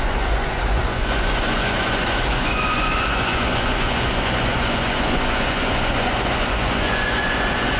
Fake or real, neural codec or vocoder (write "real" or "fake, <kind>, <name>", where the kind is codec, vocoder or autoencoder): fake, vocoder, Vocos